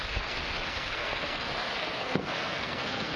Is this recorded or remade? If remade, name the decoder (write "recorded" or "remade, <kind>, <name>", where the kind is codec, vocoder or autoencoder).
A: remade, codec, SNAC